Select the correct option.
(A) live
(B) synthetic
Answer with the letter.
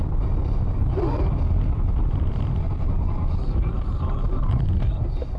B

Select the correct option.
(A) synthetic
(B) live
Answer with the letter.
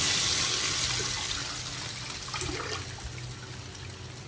B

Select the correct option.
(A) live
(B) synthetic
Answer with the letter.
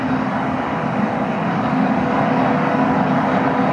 B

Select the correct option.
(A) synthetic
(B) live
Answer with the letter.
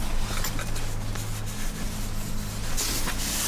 B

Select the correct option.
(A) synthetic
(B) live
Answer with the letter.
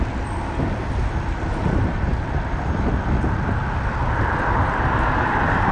B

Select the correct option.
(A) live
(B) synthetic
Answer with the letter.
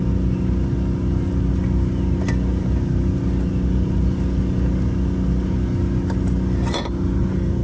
A